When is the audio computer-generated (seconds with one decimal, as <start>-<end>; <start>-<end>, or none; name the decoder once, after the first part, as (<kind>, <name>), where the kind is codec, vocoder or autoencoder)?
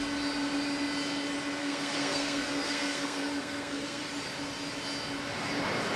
1.6-4.0 (codec, SNAC)